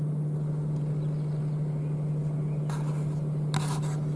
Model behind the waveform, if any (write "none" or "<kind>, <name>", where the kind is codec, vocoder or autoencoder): none